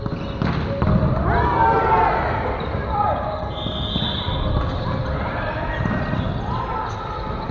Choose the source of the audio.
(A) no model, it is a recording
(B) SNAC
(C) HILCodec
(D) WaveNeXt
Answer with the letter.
A